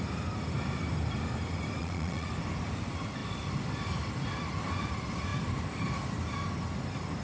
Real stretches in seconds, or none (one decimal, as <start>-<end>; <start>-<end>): 0.0-1.8; 2.3-7.2

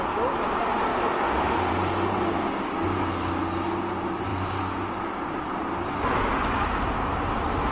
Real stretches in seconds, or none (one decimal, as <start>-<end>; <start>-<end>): 0.0-7.7

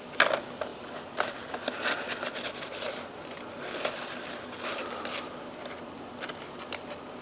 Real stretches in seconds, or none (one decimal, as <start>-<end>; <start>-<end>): 0.0-7.2

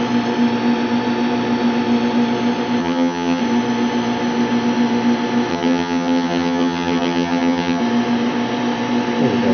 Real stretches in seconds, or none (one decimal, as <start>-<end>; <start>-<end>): 0.0-2.8; 3.4-5.5; 7.8-9.5